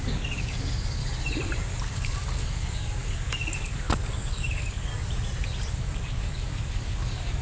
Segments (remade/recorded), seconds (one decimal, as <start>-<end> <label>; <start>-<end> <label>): 0.0-1.0 remade; 1.0-1.8 recorded; 1.8-4.9 remade; 4.9-5.7 recorded; 5.7-7.4 remade